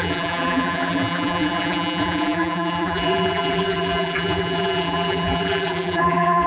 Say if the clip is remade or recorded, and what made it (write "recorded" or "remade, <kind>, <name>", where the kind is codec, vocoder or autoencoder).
remade, vocoder, BigVGAN v2